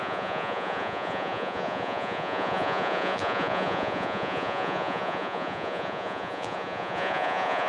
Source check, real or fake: fake